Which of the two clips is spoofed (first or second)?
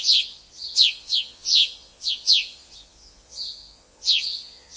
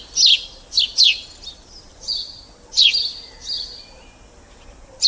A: first